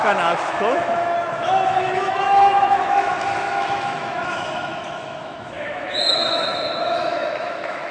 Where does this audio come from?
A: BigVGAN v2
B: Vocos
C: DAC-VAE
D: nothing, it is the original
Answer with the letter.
C